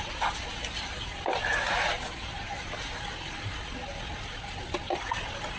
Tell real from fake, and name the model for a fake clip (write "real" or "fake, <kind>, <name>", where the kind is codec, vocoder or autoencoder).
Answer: real